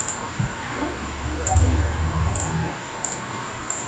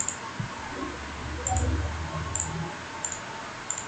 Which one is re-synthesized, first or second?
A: first